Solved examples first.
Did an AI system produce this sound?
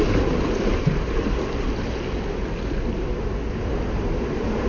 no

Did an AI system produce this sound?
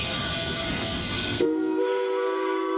yes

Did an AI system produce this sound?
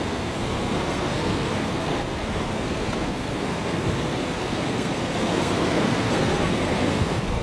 yes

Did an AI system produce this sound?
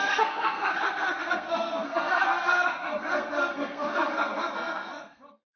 yes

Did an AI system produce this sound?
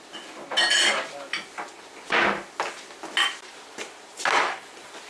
no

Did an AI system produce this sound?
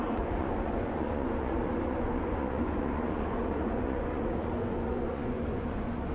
yes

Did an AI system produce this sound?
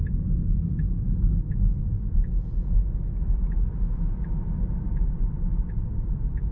no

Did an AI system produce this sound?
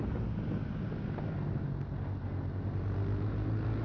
no